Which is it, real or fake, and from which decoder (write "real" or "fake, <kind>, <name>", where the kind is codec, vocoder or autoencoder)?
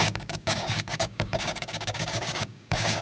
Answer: fake, codec, DAC